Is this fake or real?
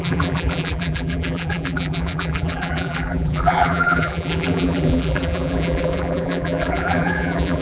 fake